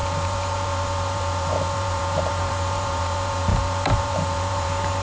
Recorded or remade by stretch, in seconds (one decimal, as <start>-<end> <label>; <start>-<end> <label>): 0.0-5.0 remade